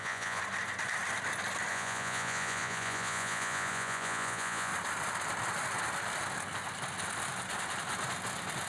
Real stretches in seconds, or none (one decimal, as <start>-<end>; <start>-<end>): 0.4-1.7; 4.7-8.7